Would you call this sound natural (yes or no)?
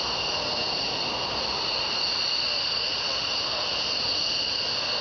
yes